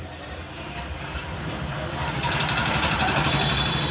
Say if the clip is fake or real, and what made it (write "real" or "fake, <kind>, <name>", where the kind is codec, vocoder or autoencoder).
fake, vocoder, BigVGAN v2